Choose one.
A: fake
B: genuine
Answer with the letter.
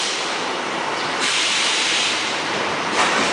A